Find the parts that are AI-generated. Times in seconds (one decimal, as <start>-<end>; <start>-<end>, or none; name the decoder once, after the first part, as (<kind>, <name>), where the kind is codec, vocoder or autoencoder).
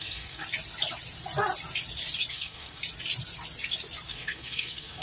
0.0-0.4 (codec, SNAC); 2.3-2.8; 4.1-5.0